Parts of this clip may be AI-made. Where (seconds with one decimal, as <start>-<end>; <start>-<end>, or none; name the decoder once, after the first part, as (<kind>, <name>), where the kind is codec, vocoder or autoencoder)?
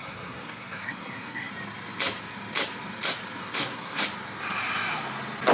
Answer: 0.0-1.5 (codec, SNAC); 3.4-4.0